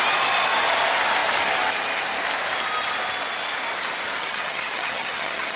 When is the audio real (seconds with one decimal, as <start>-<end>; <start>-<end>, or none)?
0.0-4.2